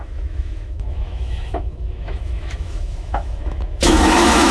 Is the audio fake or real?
fake